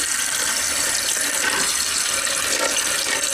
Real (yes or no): no